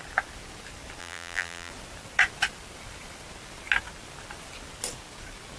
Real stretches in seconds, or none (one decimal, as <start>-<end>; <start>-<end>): 0.0-1.0; 1.7-5.6